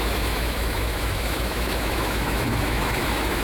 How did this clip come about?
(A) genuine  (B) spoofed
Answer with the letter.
B